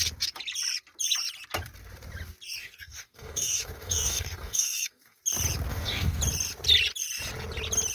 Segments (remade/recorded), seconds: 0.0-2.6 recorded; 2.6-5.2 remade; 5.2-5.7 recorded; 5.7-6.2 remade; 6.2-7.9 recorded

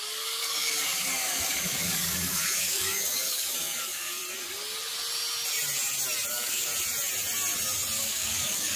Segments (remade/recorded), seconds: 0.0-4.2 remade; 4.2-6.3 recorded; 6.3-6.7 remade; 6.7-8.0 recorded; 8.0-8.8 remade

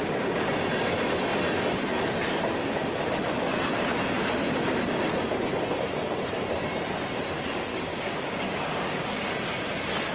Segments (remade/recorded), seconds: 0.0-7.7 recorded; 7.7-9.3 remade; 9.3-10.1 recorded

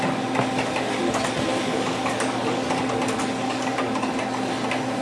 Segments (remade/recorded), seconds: 0.0-1.5 recorded; 1.5-2.7 remade; 2.7-3.4 recorded; 3.4-4.1 remade; 4.1-5.0 recorded

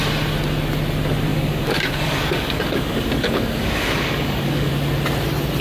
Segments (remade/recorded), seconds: 0.0-1.3 recorded; 1.3-4.7 remade; 4.7-5.6 recorded

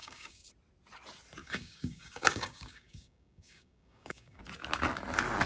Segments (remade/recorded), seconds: 0.0-0.5 remade; 0.5-1.4 recorded; 1.4-4.4 remade; 4.4-5.5 recorded